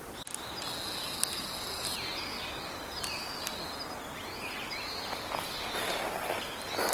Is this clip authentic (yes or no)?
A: yes